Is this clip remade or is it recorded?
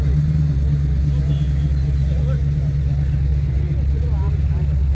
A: recorded